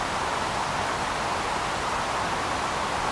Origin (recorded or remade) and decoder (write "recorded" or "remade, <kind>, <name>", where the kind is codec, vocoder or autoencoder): recorded